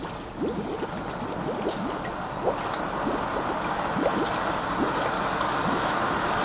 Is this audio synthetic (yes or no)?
no